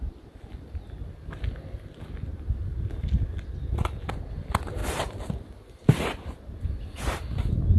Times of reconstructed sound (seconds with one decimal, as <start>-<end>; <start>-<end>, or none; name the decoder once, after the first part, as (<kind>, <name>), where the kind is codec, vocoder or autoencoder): none

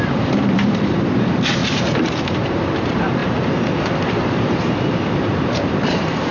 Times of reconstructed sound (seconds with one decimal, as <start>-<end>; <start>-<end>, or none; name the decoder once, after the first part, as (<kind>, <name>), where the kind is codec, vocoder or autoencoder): 0.0-6.3 (vocoder, BigVGAN v2)

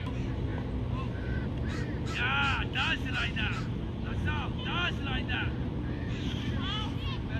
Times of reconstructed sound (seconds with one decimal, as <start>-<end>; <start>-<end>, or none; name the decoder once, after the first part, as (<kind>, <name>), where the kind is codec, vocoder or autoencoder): 5.6-7.4 (vocoder, BigVGAN v2)

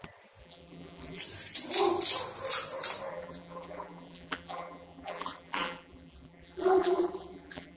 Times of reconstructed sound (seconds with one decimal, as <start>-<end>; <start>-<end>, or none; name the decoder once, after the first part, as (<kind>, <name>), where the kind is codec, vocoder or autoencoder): 0.4-1.2 (vocoder, BigVGAN v2); 3.1-7.8

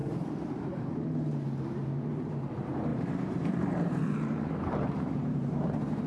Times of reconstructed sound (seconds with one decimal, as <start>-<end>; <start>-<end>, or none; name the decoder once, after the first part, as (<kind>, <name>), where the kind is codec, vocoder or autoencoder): 0.0-1.3 (vocoder, BigVGAN v2); 2.9-6.1